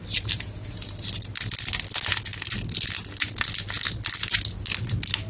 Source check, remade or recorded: recorded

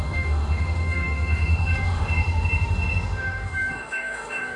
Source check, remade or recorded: remade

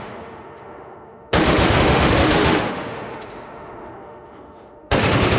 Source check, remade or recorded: remade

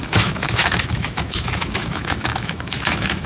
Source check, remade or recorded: remade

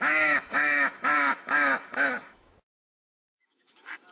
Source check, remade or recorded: remade